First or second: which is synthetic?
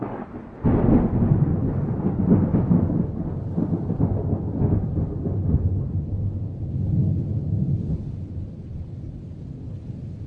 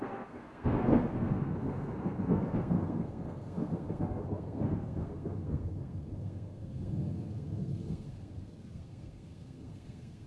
second